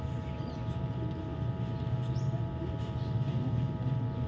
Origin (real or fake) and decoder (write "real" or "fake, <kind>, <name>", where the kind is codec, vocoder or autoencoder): fake, vocoder, BigVGAN v2